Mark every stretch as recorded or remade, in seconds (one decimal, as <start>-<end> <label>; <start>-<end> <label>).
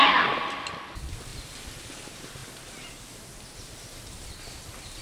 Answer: 0.0-2.4 remade; 2.4-3.9 recorded; 3.9-5.0 remade